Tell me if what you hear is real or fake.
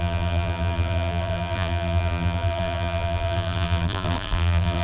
fake